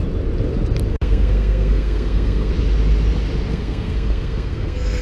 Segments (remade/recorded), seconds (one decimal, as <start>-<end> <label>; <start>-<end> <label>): 0.0-0.9 recorded; 0.9-2.5 remade; 2.5-3.5 recorded; 3.5-5.0 remade